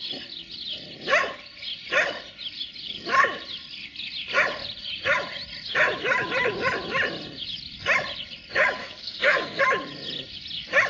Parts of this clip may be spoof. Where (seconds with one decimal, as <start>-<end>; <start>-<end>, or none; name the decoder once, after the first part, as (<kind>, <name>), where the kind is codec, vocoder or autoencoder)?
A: 8.8-9.6 (codec, SNAC)